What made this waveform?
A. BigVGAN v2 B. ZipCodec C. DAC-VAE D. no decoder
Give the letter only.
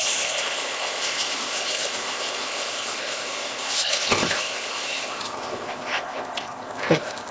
B